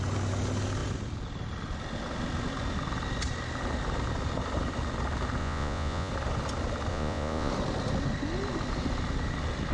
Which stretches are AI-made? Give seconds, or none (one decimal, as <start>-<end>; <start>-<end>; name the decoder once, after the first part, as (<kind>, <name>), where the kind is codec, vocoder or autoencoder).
5.4-6.1 (vocoder, Vocos); 6.9-7.5

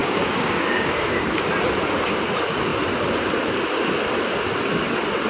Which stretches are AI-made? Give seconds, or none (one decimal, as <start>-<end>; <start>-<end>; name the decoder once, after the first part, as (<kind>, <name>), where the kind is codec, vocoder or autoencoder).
0.0-1.5 (codec, DAC)

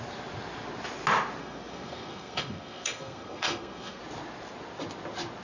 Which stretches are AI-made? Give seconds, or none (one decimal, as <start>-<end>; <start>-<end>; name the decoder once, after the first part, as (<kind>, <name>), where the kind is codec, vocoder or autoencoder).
1.4-4.0 (codec, SNAC)